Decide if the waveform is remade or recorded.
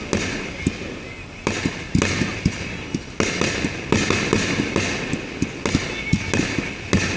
recorded